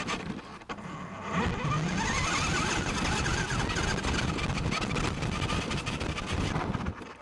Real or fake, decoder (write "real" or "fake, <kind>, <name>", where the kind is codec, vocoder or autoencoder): real